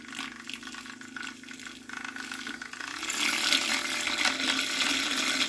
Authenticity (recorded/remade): recorded